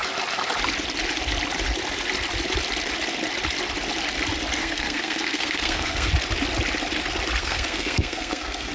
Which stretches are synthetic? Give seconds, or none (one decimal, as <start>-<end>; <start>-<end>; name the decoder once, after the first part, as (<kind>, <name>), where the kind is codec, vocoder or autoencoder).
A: 4.6-6.1 (codec, SNAC); 7.4-8.7